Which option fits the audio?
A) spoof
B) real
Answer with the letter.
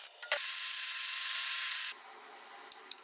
A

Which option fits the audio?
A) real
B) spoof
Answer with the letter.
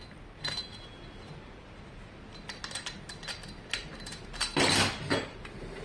A